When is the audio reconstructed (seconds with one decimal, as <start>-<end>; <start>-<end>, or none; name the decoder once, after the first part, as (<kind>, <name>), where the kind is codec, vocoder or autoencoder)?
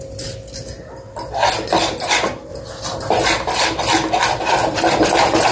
none